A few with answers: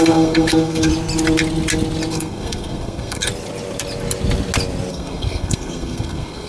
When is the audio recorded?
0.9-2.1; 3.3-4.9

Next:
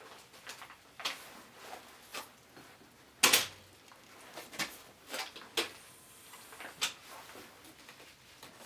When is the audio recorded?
0.0-8.7

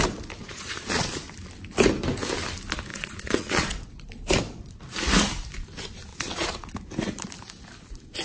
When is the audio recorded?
0.0-0.4; 1.1-2.9; 4.0-6.1; 6.7-8.2